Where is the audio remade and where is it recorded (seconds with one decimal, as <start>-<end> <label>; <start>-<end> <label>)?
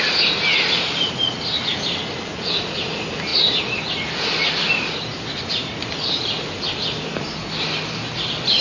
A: 0.0-8.6 recorded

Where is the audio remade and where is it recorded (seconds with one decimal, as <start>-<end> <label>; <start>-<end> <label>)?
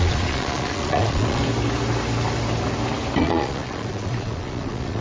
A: 0.0-1.4 remade; 1.4-3.2 recorded; 3.2-5.0 remade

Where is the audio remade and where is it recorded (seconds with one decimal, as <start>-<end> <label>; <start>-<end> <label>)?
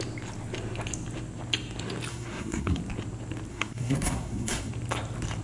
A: 0.0-2.1 recorded; 2.1-2.8 remade; 2.8-3.5 recorded; 3.5-4.7 remade; 4.7-5.4 recorded